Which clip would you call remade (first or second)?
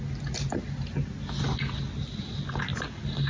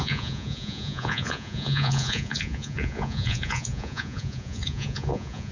second